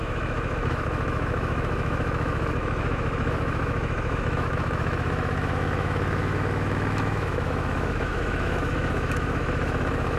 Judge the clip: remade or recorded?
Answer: remade